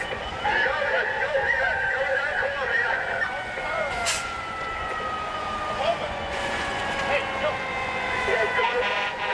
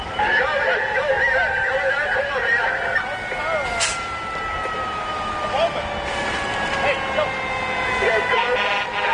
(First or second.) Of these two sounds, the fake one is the first